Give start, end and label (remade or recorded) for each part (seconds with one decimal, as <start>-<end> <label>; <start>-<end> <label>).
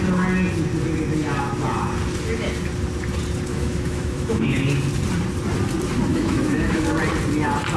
0.0-3.5 recorded; 3.5-4.6 remade; 4.6-6.1 recorded; 6.1-6.9 remade; 6.9-7.8 recorded